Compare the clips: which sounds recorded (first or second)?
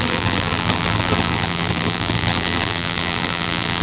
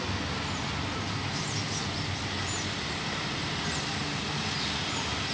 second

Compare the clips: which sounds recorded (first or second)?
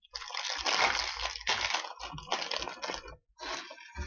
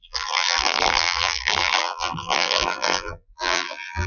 first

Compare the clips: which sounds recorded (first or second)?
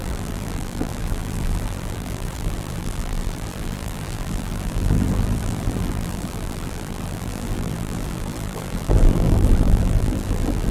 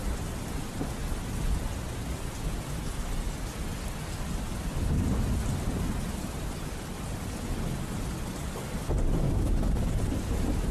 second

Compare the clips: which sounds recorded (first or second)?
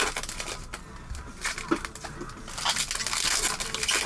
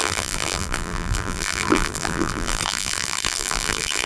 first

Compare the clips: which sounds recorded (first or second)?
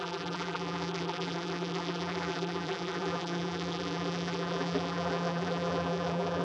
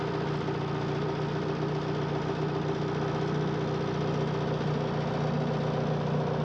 second